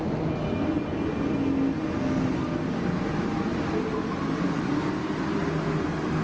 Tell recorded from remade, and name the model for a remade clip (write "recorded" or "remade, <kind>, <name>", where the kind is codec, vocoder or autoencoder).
recorded